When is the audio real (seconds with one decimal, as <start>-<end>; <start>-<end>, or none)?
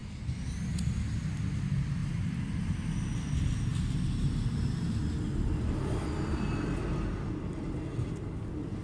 0.0-8.8